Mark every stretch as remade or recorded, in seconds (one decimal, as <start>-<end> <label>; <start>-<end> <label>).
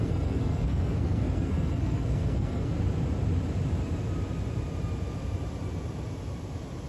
0.0-2.7 remade; 2.7-6.9 recorded